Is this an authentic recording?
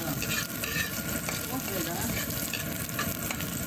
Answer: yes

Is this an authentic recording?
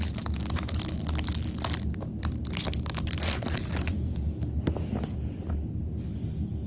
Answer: yes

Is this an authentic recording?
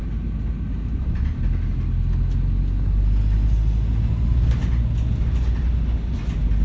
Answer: yes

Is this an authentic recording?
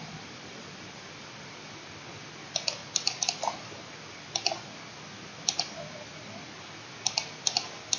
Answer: yes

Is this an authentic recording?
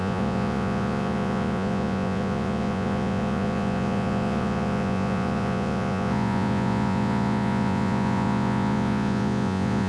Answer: no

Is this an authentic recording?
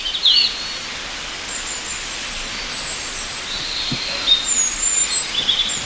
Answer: yes